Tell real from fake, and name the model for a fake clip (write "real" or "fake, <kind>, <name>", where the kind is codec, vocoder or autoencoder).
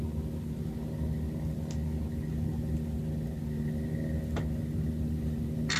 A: real